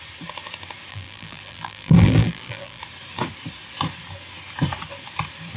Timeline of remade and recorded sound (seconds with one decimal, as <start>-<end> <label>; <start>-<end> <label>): 0.0-0.9 recorded; 0.9-2.8 remade; 2.8-5.6 recorded